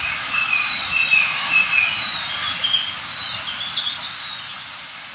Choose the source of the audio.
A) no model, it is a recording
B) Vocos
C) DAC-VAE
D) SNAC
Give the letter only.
A